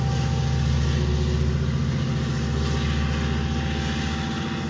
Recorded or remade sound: recorded